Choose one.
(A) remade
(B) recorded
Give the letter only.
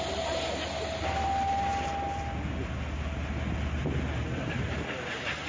B